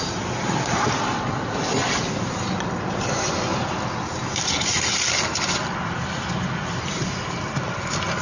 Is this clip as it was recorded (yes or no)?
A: yes